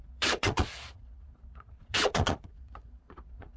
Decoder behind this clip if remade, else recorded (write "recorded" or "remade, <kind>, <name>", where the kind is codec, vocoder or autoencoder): remade, vocoder, Vocos